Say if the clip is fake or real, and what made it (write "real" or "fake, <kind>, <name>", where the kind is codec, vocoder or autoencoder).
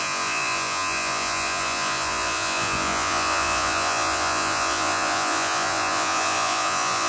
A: fake, vocoder, Vocos